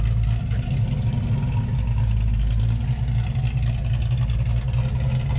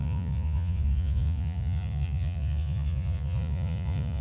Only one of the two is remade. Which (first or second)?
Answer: second